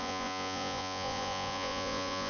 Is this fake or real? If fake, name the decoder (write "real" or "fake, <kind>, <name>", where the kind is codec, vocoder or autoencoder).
fake, vocoder, Vocos